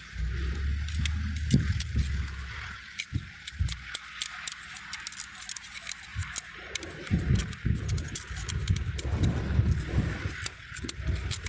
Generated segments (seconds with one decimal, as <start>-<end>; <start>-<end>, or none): none